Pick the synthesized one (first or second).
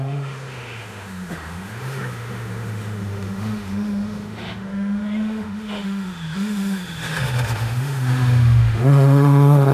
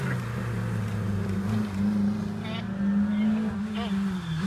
first